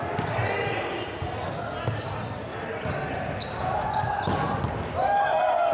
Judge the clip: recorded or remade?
recorded